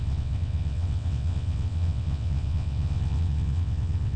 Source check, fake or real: fake